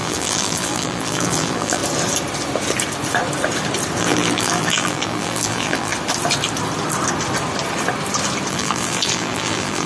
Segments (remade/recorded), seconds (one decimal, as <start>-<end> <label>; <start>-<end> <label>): 0.0-1.8 remade; 1.8-4.0 recorded; 4.0-5.9 remade; 5.9-8.5 recorded; 8.5-9.9 remade